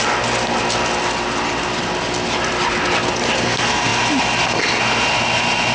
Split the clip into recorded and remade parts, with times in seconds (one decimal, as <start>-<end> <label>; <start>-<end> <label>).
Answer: 0.0-5.7 recorded